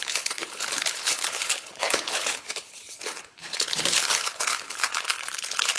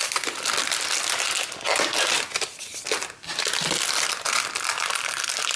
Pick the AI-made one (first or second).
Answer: first